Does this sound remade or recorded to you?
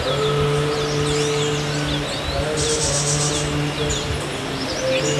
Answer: recorded